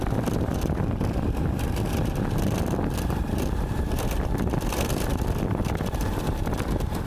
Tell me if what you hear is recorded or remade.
remade